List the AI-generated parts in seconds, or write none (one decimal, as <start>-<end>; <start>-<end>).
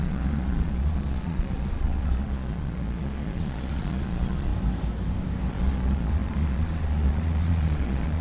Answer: 0.0-4.5; 5.5-8.2